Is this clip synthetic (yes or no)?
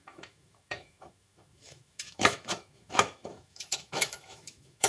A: yes